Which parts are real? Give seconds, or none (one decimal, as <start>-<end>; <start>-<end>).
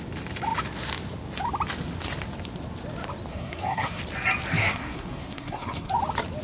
0.0-3.3; 4.0-4.6; 5.9-6.4